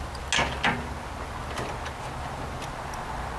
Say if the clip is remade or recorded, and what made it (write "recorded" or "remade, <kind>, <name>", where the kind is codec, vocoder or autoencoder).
recorded